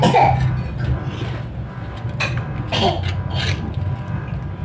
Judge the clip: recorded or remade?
recorded